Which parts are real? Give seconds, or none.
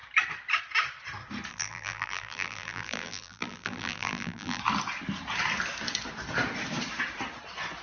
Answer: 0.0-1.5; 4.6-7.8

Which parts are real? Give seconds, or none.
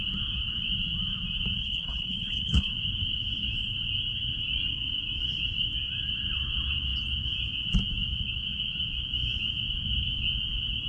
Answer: 0.0-1.6; 2.7-10.9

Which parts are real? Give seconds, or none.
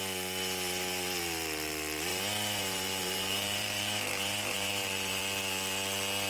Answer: 0.0-2.1; 5.2-6.3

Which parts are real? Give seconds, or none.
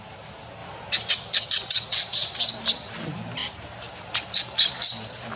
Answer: 0.0-5.4